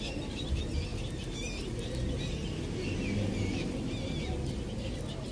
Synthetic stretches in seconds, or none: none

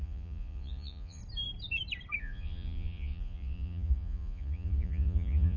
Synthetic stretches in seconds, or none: 0.0-1.2 (vocoder, Vocos); 2.2-5.6

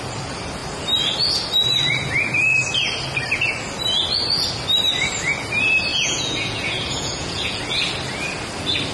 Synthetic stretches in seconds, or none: 5.9-7.6 (vocoder, Vocos)